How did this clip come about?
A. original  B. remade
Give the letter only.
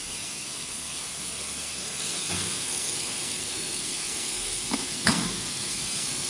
B